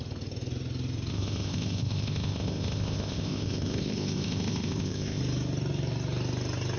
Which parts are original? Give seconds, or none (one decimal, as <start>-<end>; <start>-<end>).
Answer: 0.0-1.1; 5.2-6.8